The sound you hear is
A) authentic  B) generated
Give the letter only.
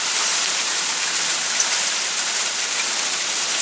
B